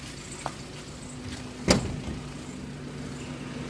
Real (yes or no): yes